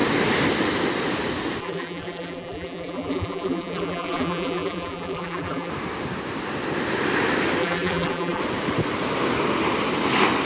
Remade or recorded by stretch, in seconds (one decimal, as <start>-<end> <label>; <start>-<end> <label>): 0.0-1.6 recorded; 1.6-5.7 remade; 5.7-7.6 recorded; 7.6-8.4 remade; 8.4-10.5 recorded